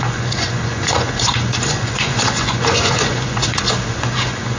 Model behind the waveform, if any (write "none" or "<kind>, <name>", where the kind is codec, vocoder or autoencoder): vocoder, Vocos